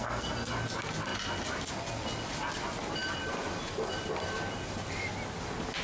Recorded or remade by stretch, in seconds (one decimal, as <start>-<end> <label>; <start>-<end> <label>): 0.0-0.5 remade; 0.5-5.8 recorded